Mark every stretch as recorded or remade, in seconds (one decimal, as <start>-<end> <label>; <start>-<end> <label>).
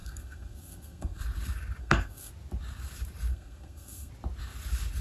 0.0-1.2 remade; 1.2-1.8 recorded; 1.8-2.3 remade; 2.3-3.3 recorded; 3.3-4.1 remade; 4.1-5.0 recorded